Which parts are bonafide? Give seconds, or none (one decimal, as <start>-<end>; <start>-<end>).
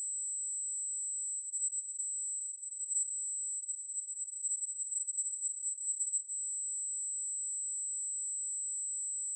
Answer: 0.0-1.4; 2.0-2.4; 3.1-3.6; 6.3-9.4